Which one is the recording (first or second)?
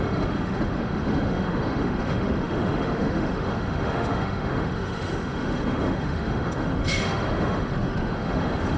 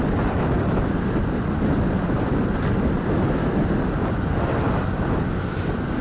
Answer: second